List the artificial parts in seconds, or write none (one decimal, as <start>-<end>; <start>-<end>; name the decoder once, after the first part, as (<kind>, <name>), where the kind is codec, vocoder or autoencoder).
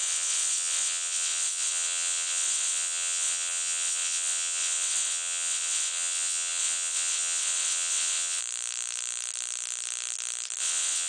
0.0-8.4 (vocoder, WaveNeXt); 10.6-11.1